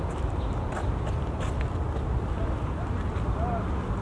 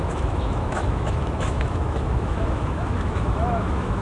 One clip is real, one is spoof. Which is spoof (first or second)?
second